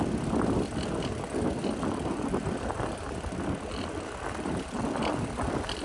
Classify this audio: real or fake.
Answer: real